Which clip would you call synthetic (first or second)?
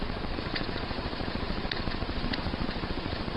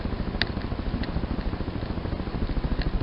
first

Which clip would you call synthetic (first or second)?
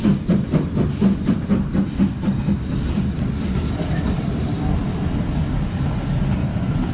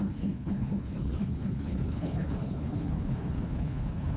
second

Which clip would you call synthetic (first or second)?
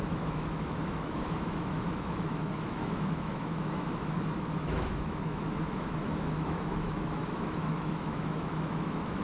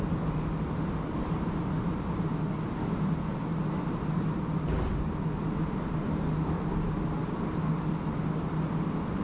first